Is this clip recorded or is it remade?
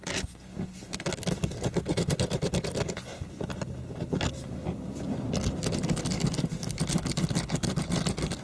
recorded